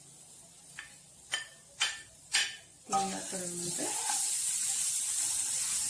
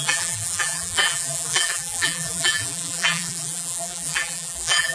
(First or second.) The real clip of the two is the first